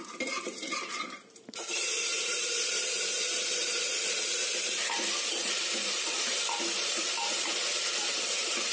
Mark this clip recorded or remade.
remade